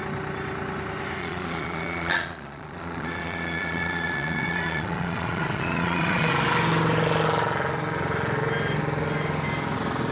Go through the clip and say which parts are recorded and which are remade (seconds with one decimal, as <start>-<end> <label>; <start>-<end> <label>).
0.0-1.2 recorded; 1.2-6.3 remade; 6.3-10.1 recorded